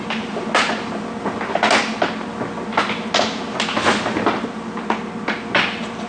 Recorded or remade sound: recorded